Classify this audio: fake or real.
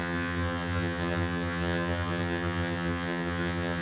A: fake